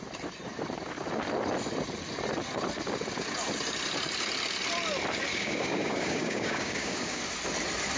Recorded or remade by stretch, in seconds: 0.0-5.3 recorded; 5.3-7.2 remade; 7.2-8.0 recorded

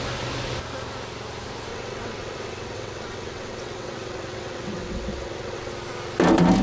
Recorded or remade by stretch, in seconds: 0.0-1.7 recorded; 1.7-5.7 remade; 5.7-6.6 recorded

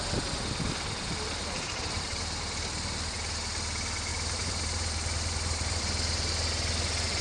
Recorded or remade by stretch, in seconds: 0.0-1.4 recorded; 1.4-2.2 remade; 2.2-4.1 recorded; 4.1-5.8 remade; 5.8-7.2 recorded

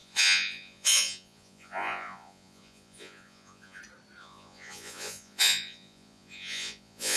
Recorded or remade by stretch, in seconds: 0.0-3.8 remade; 3.8-4.2 recorded; 4.2-7.2 remade

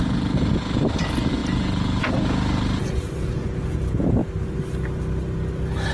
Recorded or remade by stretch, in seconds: 0.0-4.2 remade; 4.2-5.9 recorded